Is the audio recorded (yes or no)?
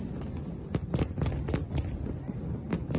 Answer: yes